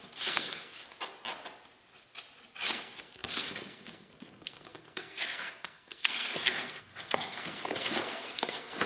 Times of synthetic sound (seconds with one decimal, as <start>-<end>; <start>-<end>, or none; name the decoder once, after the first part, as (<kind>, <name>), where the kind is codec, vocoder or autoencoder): 0.0-0.8 (codec, SNAC); 2.7-8.9